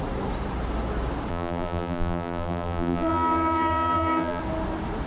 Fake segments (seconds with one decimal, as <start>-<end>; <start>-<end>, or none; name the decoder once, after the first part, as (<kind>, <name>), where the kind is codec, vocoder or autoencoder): 1.3-4.4 (vocoder, BigVGAN v2)